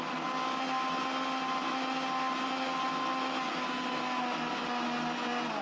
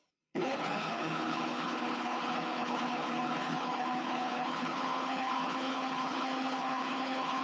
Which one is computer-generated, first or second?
second